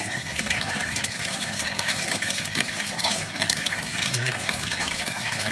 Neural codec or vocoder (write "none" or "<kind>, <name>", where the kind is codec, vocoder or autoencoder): codec, SNAC